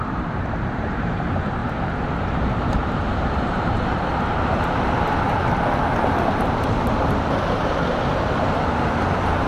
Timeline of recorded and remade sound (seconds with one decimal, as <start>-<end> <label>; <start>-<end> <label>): 0.0-1.6 remade; 1.6-2.3 recorded; 2.3-4.1 remade; 4.1-6.3 recorded; 6.3-9.5 remade